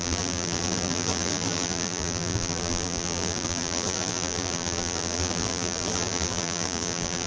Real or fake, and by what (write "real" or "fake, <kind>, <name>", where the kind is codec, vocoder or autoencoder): fake, vocoder, BigVGAN v2